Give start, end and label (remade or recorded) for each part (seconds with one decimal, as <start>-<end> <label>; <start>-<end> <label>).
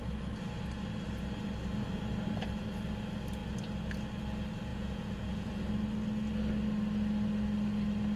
0.0-4.7 recorded; 4.7-5.5 remade; 5.5-8.2 recorded